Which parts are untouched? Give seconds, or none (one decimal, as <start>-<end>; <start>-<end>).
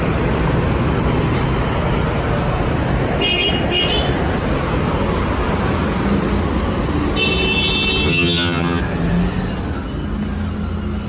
0.0-8.1; 8.8-11.1